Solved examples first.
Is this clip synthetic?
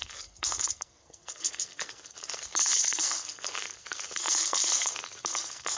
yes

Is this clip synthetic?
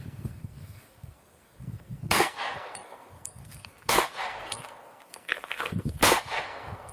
yes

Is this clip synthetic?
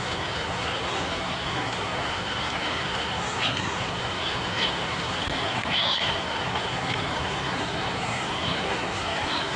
yes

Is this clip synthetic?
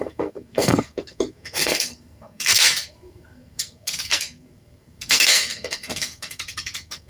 yes